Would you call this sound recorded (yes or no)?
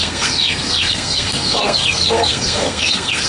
no